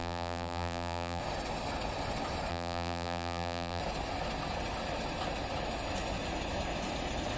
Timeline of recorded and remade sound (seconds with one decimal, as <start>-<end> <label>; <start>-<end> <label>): 0.0-1.2 remade; 1.2-2.5 recorded; 2.5-3.8 remade; 3.8-7.4 recorded